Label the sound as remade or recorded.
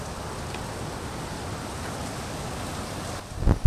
recorded